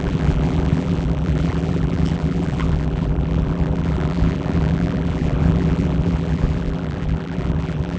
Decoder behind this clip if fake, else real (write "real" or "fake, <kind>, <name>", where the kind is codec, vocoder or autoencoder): fake, vocoder, BigVGAN v2